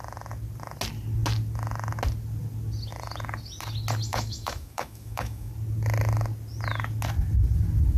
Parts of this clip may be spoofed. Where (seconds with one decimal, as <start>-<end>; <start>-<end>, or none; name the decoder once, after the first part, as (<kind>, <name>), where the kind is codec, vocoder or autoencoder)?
4.1-5.5 (autoencoder, DAC-VAE)